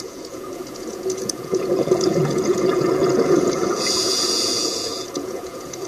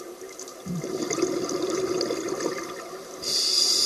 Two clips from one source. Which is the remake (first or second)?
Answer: first